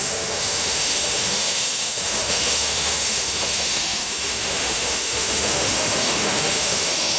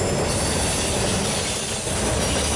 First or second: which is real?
second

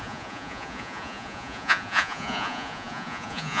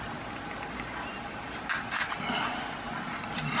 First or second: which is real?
second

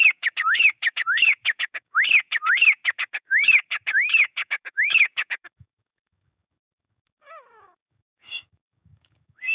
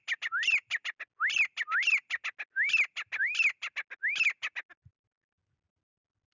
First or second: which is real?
second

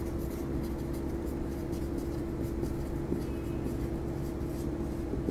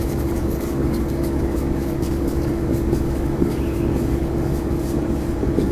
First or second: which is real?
first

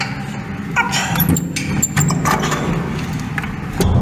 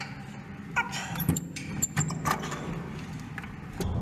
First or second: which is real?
first